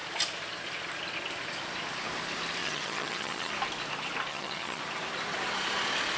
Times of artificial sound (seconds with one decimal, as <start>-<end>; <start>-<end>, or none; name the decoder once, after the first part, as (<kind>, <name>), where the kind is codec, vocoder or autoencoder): 2.6-3.5 (vocoder, HiFi-GAN); 4.3-4.8